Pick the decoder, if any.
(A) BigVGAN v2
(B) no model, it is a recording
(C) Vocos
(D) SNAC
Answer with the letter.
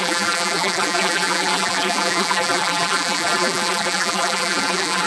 A